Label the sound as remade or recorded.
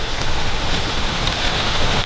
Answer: remade